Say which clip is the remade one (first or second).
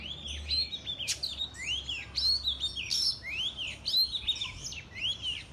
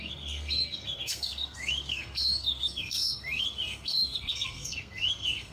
second